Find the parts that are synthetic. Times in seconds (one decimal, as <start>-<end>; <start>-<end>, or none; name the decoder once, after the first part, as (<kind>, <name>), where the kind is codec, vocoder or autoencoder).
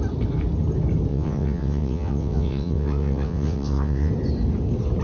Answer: 1.1-4.1 (vocoder, WaveNeXt)